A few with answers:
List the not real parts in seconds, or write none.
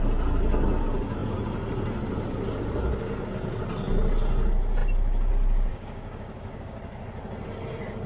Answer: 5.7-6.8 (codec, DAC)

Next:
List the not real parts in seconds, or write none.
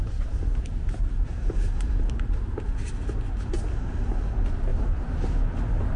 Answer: 0.0-1.5 (vocoder, BigVGAN v2); 4.7-5.2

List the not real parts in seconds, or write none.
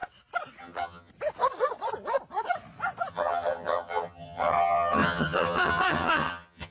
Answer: 0.6-1.1 (vocoder, HiFi-GAN); 3.1-6.7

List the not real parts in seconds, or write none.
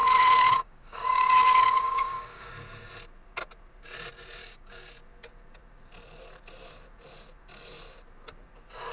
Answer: 0.0-2.5 (codec, DAC); 4.4-4.9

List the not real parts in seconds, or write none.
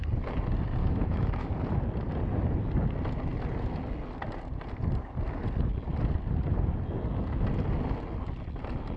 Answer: 0.8-1.5 (autoencoder, DAC-VAE)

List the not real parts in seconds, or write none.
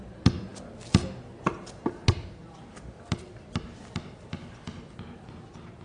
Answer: none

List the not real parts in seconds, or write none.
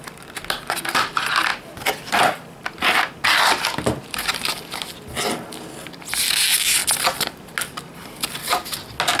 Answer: none